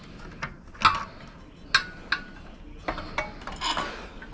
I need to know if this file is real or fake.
real